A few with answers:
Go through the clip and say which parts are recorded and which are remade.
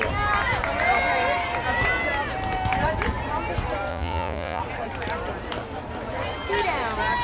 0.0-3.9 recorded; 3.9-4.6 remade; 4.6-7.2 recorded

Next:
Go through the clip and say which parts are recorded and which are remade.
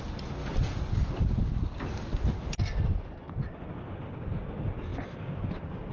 0.0-5.9 recorded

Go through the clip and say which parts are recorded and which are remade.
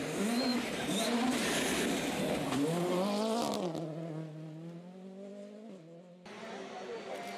0.0-0.5 recorded; 0.5-1.5 remade; 1.5-7.4 recorded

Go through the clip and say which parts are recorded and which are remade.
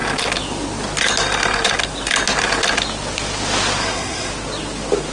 0.0-3.8 recorded; 3.8-4.3 remade; 4.3-5.1 recorded